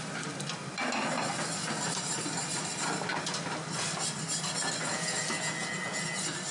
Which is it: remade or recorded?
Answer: recorded